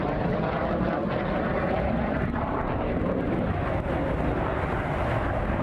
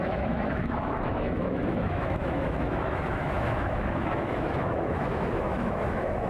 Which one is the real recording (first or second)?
first